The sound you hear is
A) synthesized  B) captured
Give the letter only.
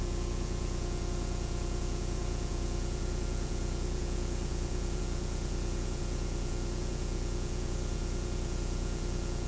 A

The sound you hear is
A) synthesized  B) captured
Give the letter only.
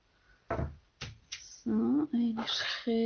B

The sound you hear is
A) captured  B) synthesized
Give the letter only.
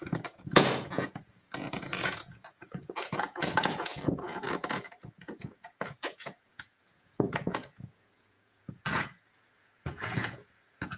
B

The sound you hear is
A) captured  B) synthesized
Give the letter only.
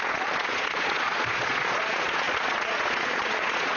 B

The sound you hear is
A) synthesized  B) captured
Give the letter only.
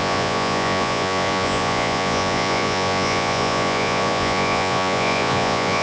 A